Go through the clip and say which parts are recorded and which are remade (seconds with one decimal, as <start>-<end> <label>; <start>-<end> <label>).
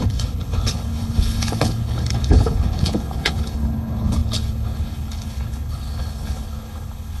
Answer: 0.0-7.2 remade